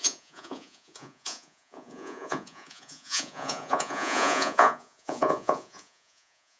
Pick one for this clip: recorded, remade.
remade